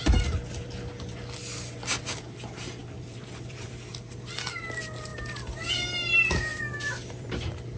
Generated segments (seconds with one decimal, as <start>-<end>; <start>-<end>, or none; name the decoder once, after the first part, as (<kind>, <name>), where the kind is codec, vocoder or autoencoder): 2.8-3.7 (vocoder, BigVGAN v2); 5.1-5.7; 6.5-7.3